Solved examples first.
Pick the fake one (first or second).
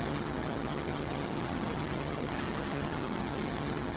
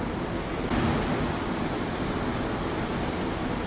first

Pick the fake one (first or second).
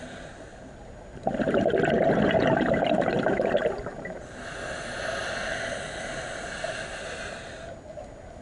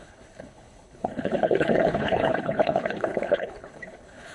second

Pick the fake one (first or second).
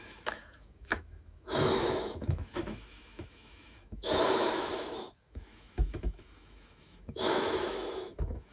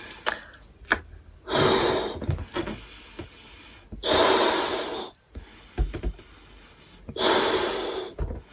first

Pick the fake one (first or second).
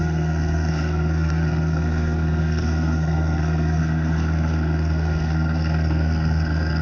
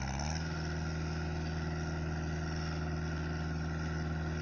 first